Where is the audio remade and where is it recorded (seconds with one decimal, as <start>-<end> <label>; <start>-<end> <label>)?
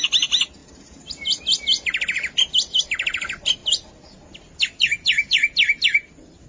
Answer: 0.0-6.5 recorded